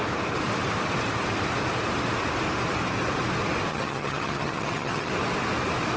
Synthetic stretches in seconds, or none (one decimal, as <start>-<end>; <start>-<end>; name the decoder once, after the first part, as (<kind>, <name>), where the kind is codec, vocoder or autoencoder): 3.7-5.1 (vocoder, HiFi-GAN)

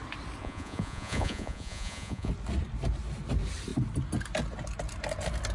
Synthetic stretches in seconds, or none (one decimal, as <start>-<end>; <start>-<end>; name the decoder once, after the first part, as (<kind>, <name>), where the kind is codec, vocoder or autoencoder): 0.4-2.3 (vocoder, Vocos)

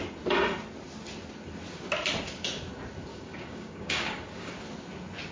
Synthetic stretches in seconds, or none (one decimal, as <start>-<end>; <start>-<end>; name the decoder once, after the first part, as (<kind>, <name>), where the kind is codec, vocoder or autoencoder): 3.1-4.5 (codec, DAC)

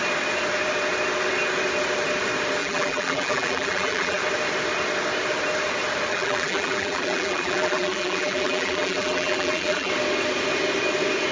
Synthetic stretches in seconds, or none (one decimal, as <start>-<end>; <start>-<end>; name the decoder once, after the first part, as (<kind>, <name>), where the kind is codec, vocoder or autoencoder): 2.6-4.2 (vocoder, BigVGAN v2); 6.1-9.9

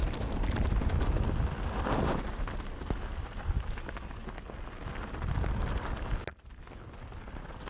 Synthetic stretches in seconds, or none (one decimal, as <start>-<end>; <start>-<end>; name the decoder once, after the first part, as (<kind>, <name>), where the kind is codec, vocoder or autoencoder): none

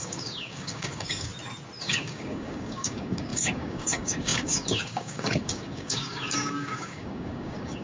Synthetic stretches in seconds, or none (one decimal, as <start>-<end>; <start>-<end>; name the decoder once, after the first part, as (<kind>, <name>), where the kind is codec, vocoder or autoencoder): 0.0-1.3 (codec, DAC); 1.8-7.8

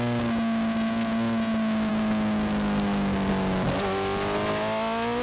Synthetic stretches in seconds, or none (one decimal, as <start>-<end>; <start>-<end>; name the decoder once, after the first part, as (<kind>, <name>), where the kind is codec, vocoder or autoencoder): none